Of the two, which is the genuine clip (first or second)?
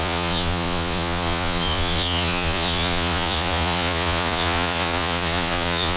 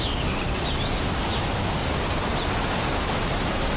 second